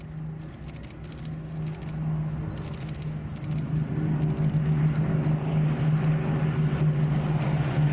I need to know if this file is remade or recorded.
recorded